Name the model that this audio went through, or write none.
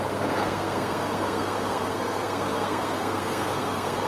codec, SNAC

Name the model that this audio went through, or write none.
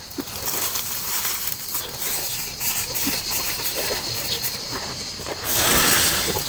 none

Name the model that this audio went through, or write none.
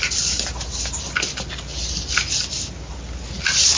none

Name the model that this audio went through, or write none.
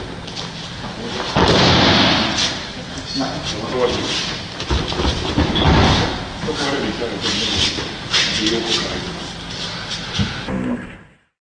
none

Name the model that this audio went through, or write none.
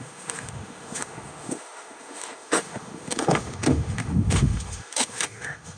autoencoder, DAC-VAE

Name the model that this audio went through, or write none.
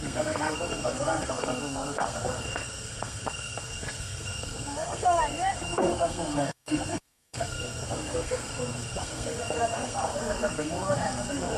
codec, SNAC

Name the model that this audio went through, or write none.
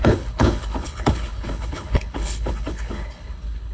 codec, HILCodec